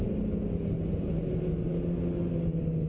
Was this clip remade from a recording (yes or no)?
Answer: no